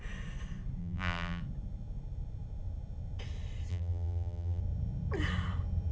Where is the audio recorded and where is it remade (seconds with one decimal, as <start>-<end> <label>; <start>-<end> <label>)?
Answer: 0.0-0.8 recorded; 0.8-1.4 remade; 1.4-3.7 recorded; 3.7-4.6 remade; 4.6-5.9 recorded